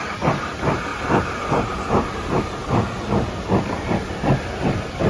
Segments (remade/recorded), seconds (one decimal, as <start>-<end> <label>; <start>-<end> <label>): 0.0-5.1 recorded